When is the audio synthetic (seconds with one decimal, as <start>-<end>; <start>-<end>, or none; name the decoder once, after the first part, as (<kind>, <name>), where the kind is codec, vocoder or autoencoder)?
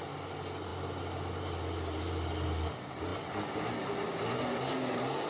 none